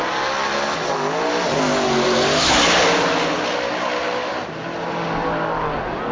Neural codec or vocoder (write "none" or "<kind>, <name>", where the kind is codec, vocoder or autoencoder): none